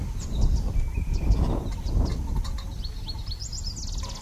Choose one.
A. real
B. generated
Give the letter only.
A